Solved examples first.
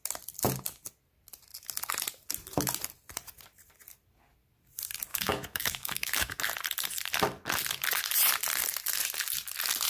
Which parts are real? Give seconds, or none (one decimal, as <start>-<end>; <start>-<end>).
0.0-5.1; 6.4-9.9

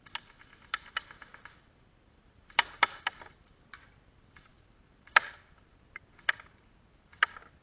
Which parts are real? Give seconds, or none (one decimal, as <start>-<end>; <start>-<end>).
0.0-7.6

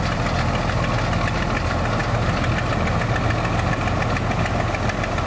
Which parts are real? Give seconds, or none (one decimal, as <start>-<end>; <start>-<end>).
0.0-5.3